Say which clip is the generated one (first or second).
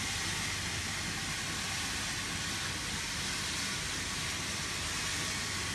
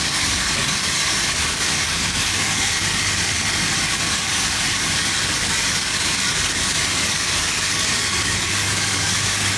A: second